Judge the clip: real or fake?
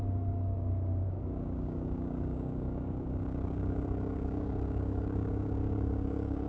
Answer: fake